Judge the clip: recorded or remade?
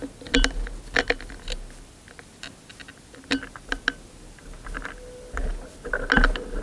recorded